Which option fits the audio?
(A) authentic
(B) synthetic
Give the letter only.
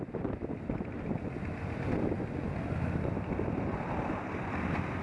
A